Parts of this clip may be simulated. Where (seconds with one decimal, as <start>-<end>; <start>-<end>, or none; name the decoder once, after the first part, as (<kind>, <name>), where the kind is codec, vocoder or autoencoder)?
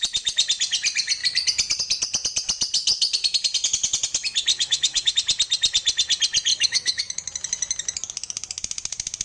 4.5-5.1 (autoencoder, DAC-VAE); 6.5-7.0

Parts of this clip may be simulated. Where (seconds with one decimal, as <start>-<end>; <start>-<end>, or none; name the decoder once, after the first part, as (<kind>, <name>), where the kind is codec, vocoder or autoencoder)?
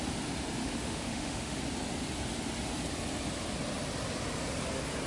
0.6-1.6 (autoencoder, DAC-VAE)